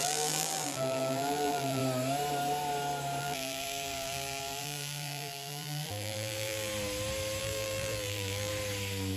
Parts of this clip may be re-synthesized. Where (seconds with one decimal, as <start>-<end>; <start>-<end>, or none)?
0.0-1.8; 3.2-6.7; 7.4-8.5